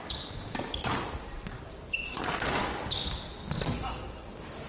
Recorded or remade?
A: recorded